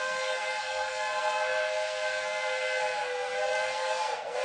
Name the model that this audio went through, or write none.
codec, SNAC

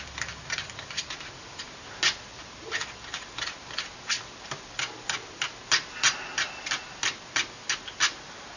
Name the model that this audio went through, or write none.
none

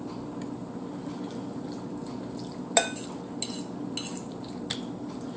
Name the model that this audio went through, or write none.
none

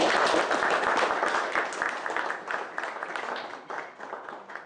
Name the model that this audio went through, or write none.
none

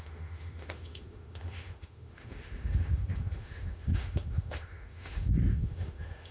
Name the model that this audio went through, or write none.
autoencoder, DAC-VAE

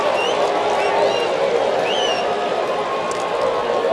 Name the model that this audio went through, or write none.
none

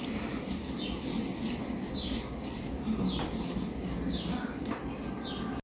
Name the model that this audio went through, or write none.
none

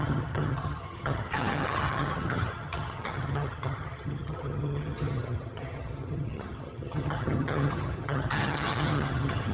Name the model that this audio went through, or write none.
vocoder, HiFi-GAN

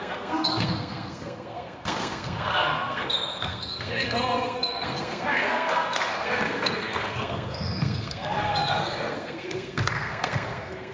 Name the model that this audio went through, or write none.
codec, SNAC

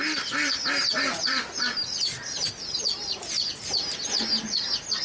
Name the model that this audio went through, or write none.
none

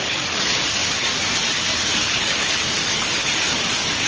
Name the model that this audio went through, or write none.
codec, DAC